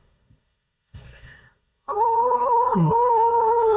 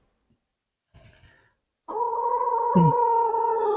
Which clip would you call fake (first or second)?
first